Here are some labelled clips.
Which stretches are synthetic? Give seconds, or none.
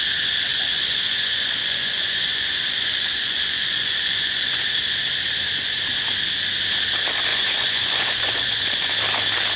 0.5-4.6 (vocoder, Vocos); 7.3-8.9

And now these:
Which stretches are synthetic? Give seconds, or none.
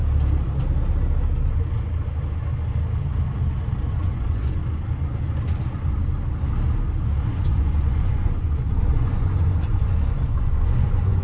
3.9-4.6 (vocoder, Vocos); 7.3-11.2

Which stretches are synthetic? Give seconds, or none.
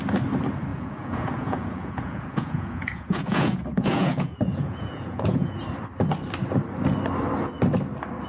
0.7-5.6 (vocoder, Vocos)